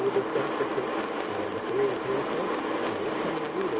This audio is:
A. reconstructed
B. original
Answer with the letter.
B